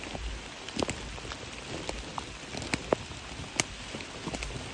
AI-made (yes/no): no